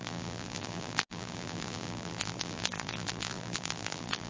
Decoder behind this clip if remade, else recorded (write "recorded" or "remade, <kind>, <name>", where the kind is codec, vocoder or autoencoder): remade, vocoder, BigVGAN v2